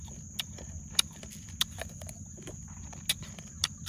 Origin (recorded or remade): recorded